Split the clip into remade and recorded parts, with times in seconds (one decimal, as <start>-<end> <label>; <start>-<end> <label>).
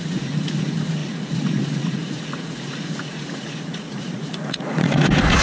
0.0-5.4 remade